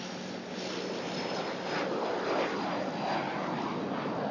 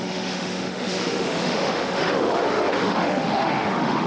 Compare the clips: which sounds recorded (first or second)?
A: first